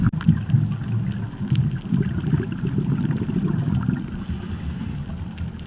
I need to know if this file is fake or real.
real